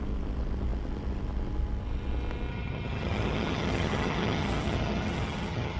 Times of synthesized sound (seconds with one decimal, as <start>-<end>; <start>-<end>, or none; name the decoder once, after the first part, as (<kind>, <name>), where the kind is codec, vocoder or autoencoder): 2.5-5.8 (vocoder, HiFi-GAN)